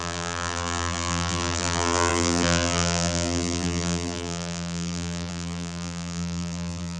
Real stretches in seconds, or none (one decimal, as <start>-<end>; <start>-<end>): none